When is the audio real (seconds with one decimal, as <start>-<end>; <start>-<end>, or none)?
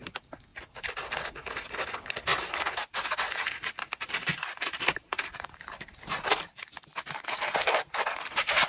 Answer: 0.0-2.3; 6.0-6.9; 8.1-8.7